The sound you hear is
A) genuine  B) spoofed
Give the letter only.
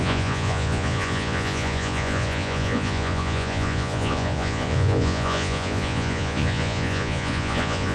B